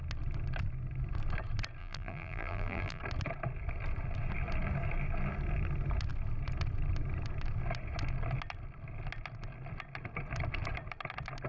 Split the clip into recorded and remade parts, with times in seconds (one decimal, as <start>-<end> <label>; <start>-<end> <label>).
0.0-1.8 recorded; 1.8-3.0 remade; 3.0-11.5 recorded